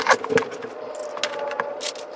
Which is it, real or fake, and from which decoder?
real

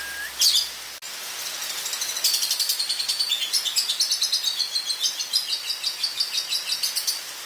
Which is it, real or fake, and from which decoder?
real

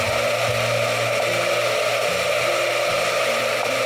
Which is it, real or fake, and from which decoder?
real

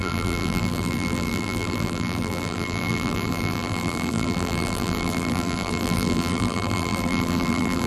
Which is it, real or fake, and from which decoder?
fake, vocoder, BigVGAN v2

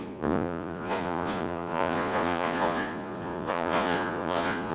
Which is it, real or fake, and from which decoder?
fake, vocoder, Vocos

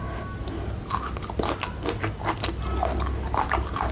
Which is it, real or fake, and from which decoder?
real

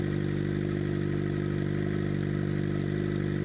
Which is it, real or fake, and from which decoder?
real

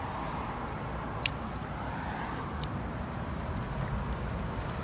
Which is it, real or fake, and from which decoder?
fake, vocoder, BigVGAN v2